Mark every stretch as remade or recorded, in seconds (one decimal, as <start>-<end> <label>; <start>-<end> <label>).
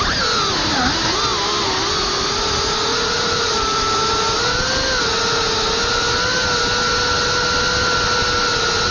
0.0-2.9 recorded; 2.9-4.2 remade; 4.2-8.9 recorded